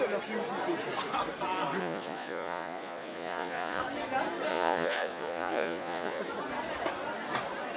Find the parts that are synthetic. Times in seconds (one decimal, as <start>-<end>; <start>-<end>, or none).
1.8-3.8; 4.5-6.2